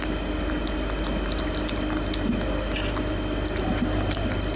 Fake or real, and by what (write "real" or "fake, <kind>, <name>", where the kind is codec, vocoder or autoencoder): real